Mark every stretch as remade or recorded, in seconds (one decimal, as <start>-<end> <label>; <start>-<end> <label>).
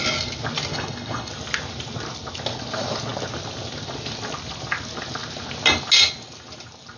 0.0-0.7 recorded; 0.7-1.3 remade; 1.3-7.0 recorded